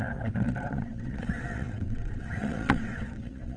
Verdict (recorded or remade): remade